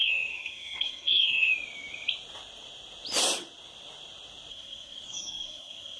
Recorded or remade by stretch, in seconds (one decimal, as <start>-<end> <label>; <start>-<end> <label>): 0.0-1.5 remade; 1.5-4.5 recorded; 4.5-6.0 remade